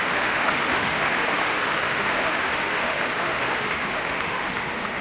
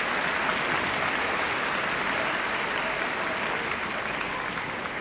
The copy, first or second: first